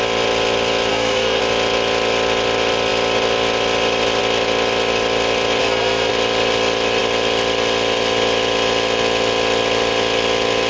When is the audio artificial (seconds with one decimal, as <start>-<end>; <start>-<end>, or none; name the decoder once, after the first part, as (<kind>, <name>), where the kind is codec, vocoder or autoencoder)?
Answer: 0.9-1.4 (codec, SNAC); 5.6-6.1